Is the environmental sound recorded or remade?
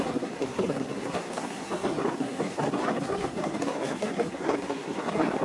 remade